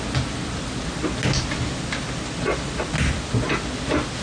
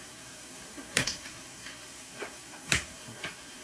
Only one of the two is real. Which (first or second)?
first